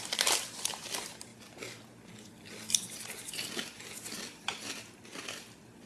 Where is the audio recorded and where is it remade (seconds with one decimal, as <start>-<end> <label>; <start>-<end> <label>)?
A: 0.0-1.3 remade; 1.3-4.8 recorded; 4.8-5.9 remade